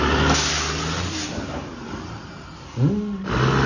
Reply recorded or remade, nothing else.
recorded